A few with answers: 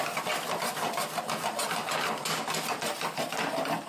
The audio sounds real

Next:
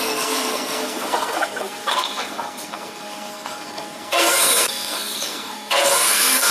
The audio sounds fake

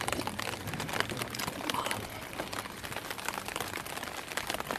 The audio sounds real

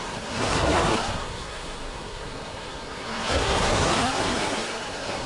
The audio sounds fake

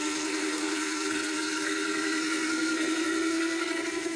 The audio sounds fake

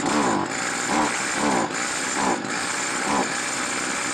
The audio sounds real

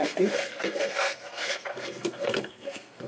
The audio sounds fake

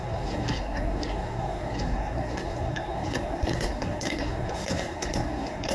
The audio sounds fake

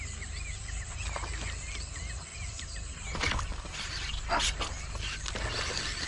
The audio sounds real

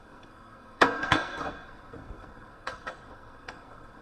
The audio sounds fake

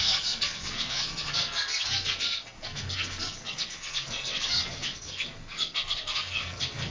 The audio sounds fake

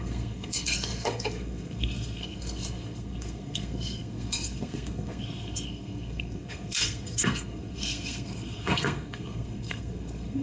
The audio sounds fake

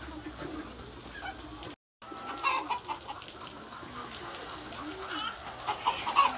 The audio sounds real